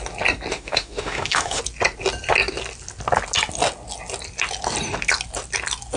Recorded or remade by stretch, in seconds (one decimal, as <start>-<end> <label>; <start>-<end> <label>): 0.0-0.5 recorded; 0.5-1.6 remade; 1.6-6.0 recorded